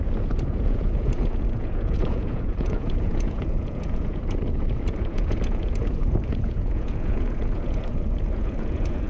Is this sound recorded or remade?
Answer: remade